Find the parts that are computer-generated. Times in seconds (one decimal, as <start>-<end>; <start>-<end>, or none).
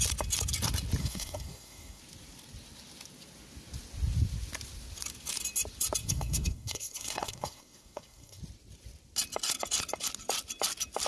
1.0-2.0; 6.0-8.4